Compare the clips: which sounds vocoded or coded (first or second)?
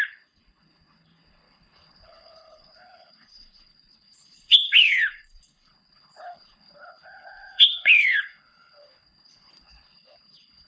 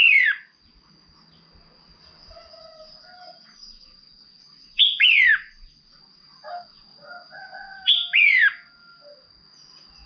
first